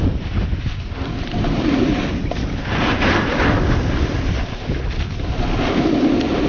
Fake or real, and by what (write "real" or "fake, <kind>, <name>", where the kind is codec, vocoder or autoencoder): real